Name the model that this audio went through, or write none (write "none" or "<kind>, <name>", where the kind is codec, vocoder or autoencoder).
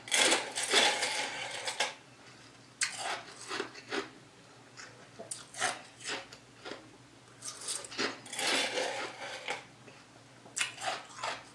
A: none